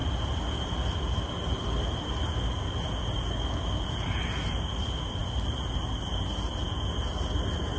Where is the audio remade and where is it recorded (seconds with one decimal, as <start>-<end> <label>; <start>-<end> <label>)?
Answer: 0.0-7.8 recorded